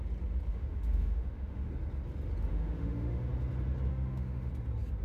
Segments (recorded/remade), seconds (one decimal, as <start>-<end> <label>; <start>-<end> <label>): 0.0-0.5 recorded; 0.5-1.7 remade; 1.7-2.5 recorded; 2.5-3.3 remade; 3.3-3.9 recorded; 3.9-4.5 remade; 4.5-5.0 recorded